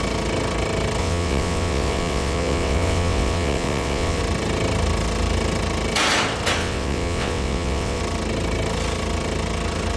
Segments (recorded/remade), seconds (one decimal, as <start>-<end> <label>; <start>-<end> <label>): 0.0-1.0 recorded; 1.0-4.2 remade; 4.2-6.6 recorded; 6.6-8.0 remade; 8.0-10.0 recorded

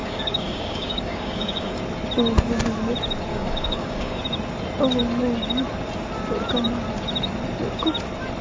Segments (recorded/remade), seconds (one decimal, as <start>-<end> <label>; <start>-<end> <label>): 0.0-1.8 remade; 1.8-3.3 recorded; 3.3-4.2 remade; 4.2-8.4 recorded

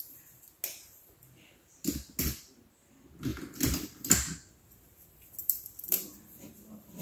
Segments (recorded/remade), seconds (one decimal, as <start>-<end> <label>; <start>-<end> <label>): 0.0-3.3 recorded; 3.3-4.1 remade; 4.1-5.4 recorded; 5.4-7.0 remade

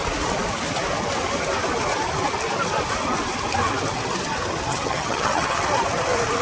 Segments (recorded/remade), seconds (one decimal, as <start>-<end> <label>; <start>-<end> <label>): 0.0-4.7 recorded; 4.7-5.6 remade; 5.6-6.4 recorded

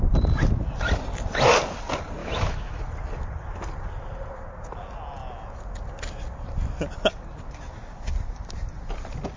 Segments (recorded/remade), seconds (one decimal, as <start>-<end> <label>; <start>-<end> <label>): 0.0-2.2 recorded; 2.2-2.8 remade; 2.8-9.4 recorded

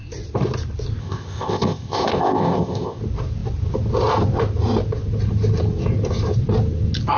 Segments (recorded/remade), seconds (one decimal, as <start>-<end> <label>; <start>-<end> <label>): 0.0-1.0 recorded; 1.0-3.0 remade; 3.0-7.2 recorded